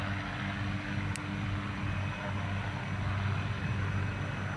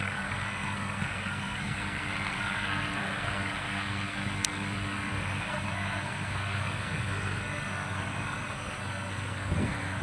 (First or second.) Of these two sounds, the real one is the first